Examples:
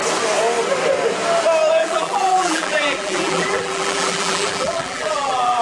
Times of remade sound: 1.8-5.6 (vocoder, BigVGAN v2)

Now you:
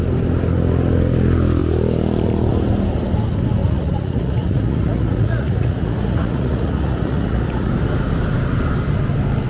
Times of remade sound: 3.6-7.7 (vocoder, Vocos)

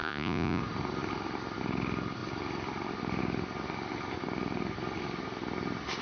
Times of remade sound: 0.0-0.6 (vocoder, Vocos)

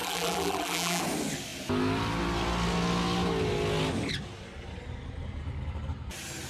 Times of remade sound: 0.0-1.0 (vocoder, BigVGAN v2)